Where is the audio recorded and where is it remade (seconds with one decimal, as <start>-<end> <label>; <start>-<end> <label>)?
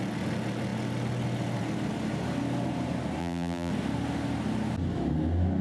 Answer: 0.0-3.2 recorded; 3.2-3.7 remade; 3.7-5.6 recorded